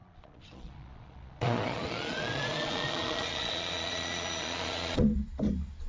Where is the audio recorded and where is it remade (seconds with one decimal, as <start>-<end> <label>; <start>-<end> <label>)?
0.0-5.1 remade; 5.1-5.9 recorded